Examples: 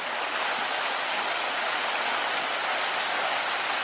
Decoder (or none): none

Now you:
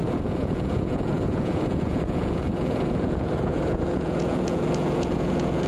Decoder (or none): vocoder, Vocos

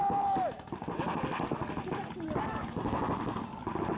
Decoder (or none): none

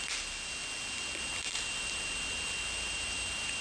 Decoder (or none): vocoder, BigVGAN v2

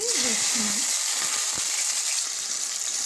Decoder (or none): none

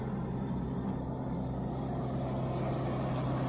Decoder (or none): none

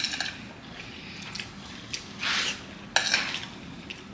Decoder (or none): none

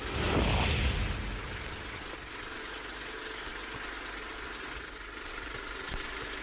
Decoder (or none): none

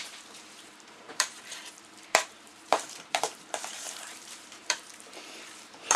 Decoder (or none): vocoder, BigVGAN v2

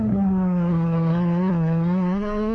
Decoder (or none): codec, SNAC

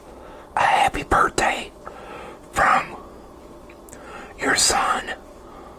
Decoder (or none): none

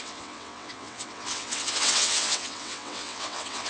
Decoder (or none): vocoder, WaveNeXt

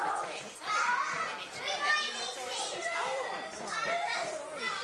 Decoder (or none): none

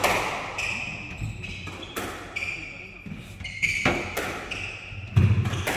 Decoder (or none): none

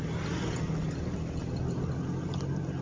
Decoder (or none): none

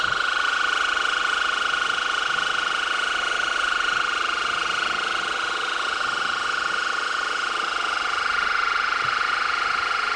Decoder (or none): vocoder, Vocos